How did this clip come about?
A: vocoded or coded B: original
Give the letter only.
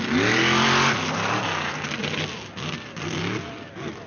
B